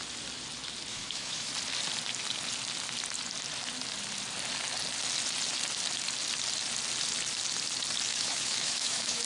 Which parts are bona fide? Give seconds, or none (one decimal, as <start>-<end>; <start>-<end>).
0.0-0.9; 1.5-8.1